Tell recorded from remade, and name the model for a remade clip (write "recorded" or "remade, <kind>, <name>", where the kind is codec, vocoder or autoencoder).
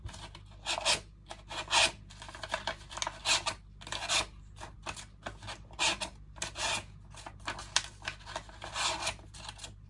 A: recorded